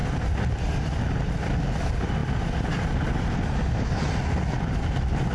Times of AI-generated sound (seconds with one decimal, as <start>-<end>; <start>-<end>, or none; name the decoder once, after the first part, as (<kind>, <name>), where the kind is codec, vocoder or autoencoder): none